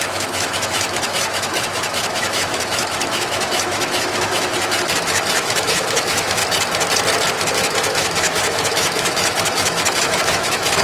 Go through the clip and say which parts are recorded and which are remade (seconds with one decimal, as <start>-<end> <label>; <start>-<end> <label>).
0.0-6.4 remade; 6.4-7.5 recorded; 7.5-10.8 remade